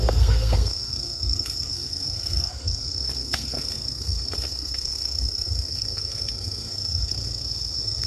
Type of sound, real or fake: fake